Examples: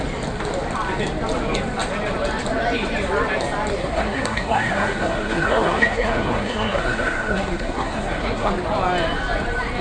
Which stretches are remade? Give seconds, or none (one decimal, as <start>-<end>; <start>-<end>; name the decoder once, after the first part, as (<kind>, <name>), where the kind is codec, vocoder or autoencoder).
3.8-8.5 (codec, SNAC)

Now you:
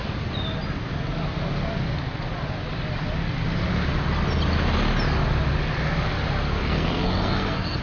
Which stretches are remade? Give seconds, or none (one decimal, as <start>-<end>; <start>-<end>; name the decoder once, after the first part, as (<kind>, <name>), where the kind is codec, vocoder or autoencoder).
6.6-7.8 (codec, SNAC)

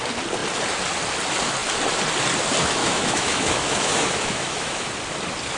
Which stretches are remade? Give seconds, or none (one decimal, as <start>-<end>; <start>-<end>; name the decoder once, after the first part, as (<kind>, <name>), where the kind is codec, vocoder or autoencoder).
2.8-4.9 (autoencoder, DAC-VAE)

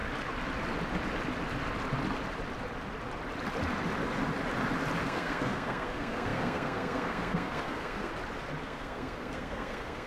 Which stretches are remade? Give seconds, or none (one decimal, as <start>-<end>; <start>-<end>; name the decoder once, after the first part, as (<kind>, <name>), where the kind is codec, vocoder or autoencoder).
5.0-8.1 (codec, SNAC); 8.6-10.1

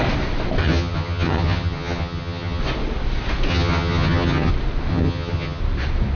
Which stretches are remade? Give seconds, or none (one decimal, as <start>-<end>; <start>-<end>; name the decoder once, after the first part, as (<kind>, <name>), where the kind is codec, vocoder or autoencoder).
0.6-2.6 (vocoder, HiFi-GAN); 3.5-4.5; 4.9-5.6

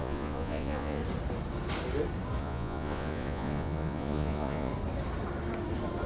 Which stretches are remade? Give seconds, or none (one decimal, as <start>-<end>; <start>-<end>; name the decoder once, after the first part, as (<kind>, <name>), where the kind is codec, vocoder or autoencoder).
0.0-1.0 (vocoder, Vocos); 2.4-4.7